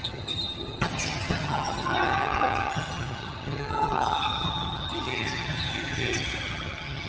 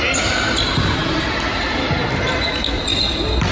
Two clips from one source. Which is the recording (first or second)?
second